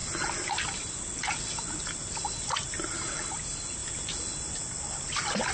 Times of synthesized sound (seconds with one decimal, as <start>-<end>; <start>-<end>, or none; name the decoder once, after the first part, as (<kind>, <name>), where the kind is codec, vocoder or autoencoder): 2.5-3.8 (vocoder, BigVGAN v2)